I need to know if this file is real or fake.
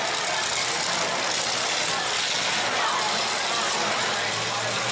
real